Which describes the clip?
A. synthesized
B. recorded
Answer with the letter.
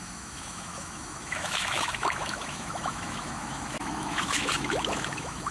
A